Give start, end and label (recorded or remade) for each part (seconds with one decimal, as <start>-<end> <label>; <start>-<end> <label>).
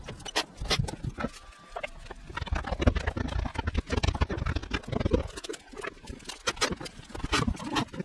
0.0-8.0 recorded